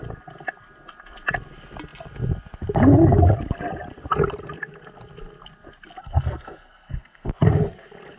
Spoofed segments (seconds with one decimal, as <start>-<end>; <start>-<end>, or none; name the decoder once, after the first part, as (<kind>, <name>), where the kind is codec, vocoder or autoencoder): 6.0-7.3 (codec, SNAC)